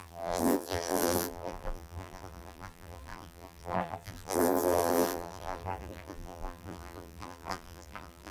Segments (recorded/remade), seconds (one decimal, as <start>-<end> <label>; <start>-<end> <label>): 0.0-8.3 remade

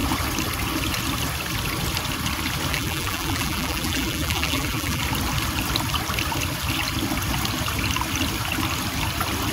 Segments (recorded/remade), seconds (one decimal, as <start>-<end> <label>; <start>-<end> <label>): 0.0-2.7 recorded; 2.7-5.0 remade; 5.0-9.5 recorded

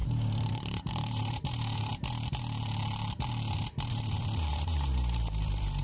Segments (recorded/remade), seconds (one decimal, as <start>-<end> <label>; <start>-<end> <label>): 0.0-1.9 remade; 1.9-4.5 recorded; 4.5-5.8 remade

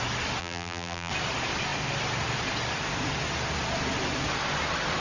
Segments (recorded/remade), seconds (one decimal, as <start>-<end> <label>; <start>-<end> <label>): 0.0-0.4 recorded; 0.4-1.1 remade; 1.1-5.0 recorded

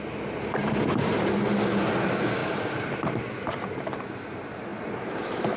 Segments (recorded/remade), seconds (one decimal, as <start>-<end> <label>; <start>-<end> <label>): 0.0-0.6 recorded; 0.6-1.4 remade; 1.4-2.4 recorded; 2.4-4.3 remade; 4.3-4.7 recorded; 4.7-5.6 remade

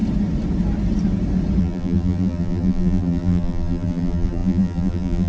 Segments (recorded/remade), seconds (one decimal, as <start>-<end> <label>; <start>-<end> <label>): 0.0-1.6 recorded; 1.6-5.3 remade

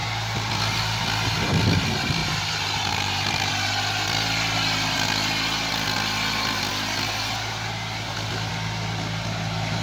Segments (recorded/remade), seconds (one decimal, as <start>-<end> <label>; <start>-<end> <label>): 0.0-2.2 recorded; 2.2-3.5 remade; 3.5-9.8 recorded

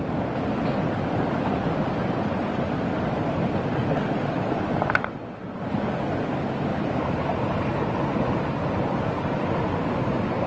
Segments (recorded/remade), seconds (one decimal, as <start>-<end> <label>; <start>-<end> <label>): 0.0-6.7 recorded; 6.7-7.6 remade; 7.6-10.5 recorded